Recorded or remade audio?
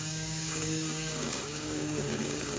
remade